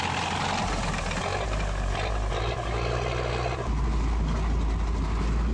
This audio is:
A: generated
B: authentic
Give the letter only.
B